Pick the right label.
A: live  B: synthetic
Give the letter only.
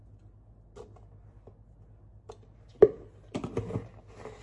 A